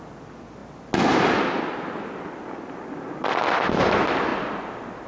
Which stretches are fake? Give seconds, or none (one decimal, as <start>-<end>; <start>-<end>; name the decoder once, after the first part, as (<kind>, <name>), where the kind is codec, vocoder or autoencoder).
none